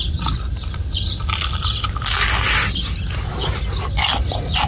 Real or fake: real